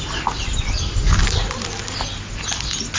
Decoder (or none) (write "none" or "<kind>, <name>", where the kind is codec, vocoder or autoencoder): vocoder, BigVGAN v2